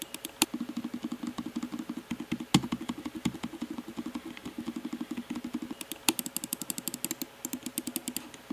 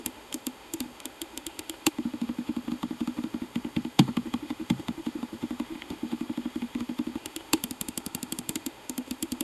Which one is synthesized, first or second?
second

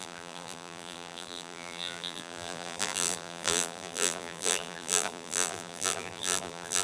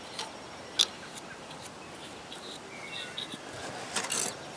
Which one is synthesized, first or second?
first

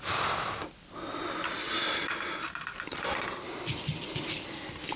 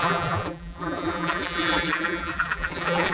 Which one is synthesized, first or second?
second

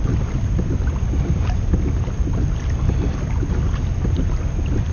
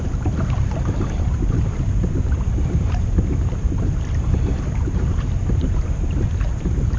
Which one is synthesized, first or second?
second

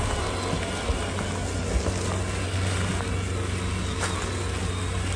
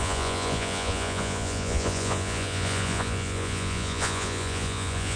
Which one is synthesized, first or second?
second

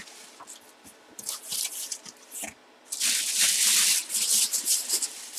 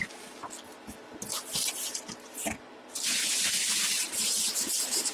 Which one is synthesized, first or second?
first